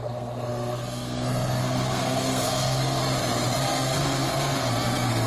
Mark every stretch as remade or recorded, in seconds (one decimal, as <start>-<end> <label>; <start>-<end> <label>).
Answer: 0.0-3.0 remade; 3.0-3.6 recorded; 3.6-5.3 remade